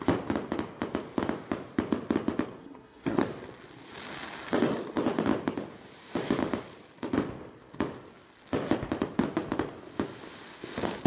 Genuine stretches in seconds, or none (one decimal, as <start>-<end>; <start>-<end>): 0.0-2.6; 3.2-11.1